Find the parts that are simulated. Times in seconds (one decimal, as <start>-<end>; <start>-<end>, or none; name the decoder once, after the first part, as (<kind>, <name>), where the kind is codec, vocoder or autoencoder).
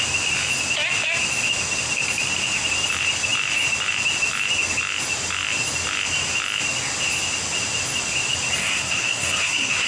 8.6-9.9 (codec, SNAC)